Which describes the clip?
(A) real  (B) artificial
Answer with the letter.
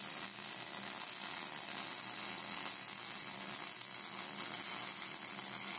A